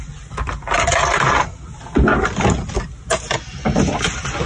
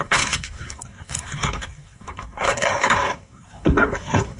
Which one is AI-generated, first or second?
second